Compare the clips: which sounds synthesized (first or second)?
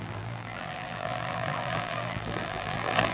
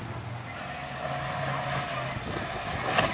first